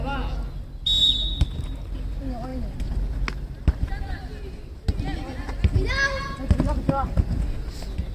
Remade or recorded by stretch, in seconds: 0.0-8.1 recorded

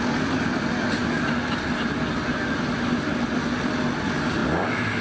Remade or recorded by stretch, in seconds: 0.0-5.0 recorded

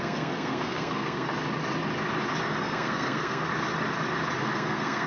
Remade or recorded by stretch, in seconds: 0.0-1.3 remade; 1.3-2.6 recorded; 2.6-3.5 remade; 3.5-4.4 recorded; 4.4-5.1 remade

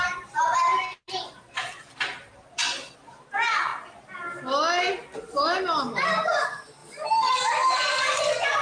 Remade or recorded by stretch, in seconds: 0.0-2.6 remade; 2.6-3.1 recorded; 3.1-3.7 remade; 3.7-6.1 recorded; 6.1-6.8 remade; 6.8-7.3 recorded; 7.3-8.6 remade

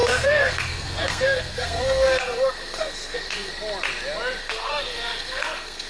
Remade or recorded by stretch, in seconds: 0.0-3.5 remade; 3.5-4.4 recorded; 4.4-5.9 remade